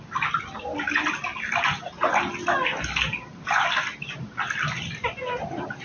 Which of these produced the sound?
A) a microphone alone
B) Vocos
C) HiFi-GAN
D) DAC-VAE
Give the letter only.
A